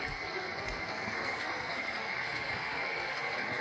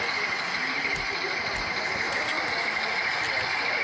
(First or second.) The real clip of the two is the second